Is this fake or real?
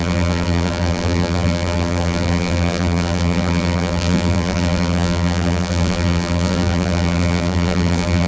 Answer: fake